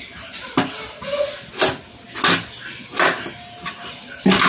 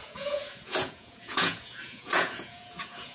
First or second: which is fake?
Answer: second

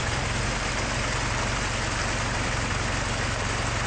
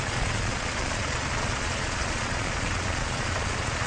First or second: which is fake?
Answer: second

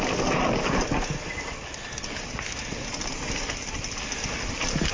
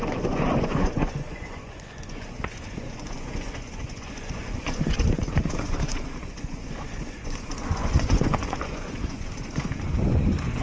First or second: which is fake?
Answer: second